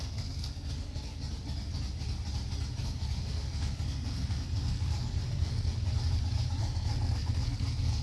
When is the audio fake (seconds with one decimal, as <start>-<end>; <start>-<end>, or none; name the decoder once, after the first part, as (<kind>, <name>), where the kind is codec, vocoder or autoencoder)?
0.0-1.1 (codec, SNAC); 2.8-5.8; 6.6-8.0